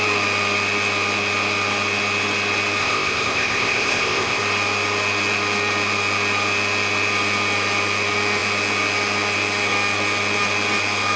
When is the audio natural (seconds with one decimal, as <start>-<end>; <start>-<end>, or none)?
0.0-2.8; 4.4-11.2